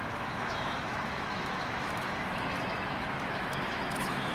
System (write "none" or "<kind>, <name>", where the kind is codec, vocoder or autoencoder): autoencoder, DAC-VAE